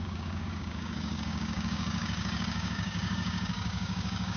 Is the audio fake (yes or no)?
yes